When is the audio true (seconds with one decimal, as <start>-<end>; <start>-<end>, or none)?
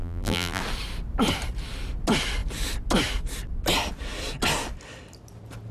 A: 0.6-5.7